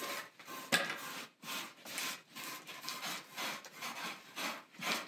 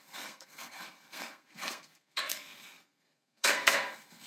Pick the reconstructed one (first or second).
second